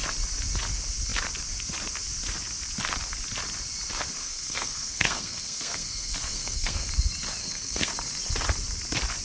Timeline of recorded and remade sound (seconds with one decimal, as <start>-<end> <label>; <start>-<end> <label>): 0.0-4.2 recorded; 4.2-6.9 remade; 6.9-7.4 recorded; 7.4-7.9 remade; 7.9-9.2 recorded